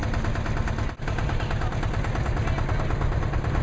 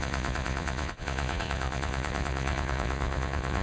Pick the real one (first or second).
first